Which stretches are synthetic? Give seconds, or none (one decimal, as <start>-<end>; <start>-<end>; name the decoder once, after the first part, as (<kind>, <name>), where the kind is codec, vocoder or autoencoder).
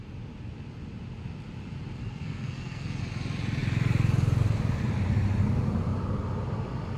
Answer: 2.0-3.0 (codec, SNAC)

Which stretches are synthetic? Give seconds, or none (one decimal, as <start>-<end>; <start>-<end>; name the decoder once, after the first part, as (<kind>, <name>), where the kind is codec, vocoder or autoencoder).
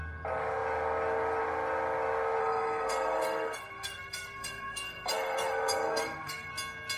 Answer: 2.4-6.5 (codec, SNAC)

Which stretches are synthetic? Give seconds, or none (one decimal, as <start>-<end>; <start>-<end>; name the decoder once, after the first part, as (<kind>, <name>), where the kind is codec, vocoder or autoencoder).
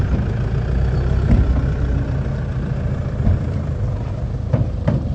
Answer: none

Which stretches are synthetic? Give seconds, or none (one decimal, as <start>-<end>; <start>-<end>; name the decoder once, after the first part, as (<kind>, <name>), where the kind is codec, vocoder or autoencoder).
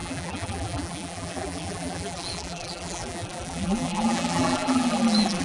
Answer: 0.0-5.4 (vocoder, BigVGAN v2)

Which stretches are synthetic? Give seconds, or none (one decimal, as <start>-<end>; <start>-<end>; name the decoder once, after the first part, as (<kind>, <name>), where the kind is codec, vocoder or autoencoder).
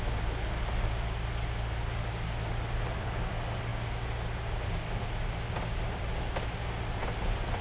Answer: none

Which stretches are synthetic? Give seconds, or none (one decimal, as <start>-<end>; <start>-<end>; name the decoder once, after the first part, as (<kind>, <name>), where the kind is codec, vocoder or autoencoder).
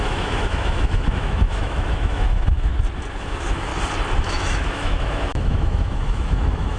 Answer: 0.0-2.7 (autoencoder, DAC-VAE); 3.2-3.7; 4.2-6.8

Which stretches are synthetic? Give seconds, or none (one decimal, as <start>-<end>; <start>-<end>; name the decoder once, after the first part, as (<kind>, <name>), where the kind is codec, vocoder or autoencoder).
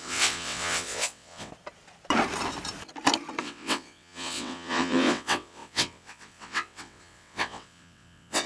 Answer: 0.0-1.5 (vocoder, WaveNeXt); 3.4-8.5